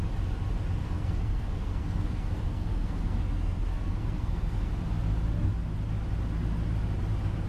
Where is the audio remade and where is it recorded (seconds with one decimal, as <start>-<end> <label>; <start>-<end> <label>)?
0.0-0.8 recorded; 0.8-4.7 remade; 4.7-7.5 recorded